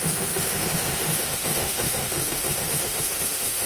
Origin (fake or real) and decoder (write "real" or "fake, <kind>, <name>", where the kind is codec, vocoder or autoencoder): fake, autoencoder, DAC-VAE